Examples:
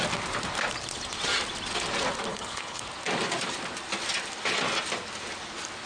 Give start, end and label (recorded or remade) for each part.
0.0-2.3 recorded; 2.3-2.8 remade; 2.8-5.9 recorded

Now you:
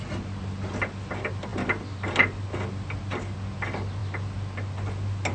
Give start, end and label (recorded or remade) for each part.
0.0-5.3 recorded

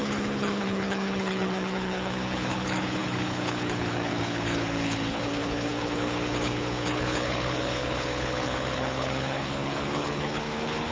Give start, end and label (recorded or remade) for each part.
0.0-10.9 remade

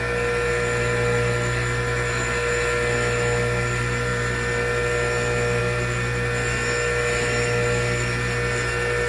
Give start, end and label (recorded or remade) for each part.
0.0-9.1 recorded